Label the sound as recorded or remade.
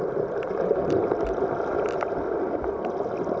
recorded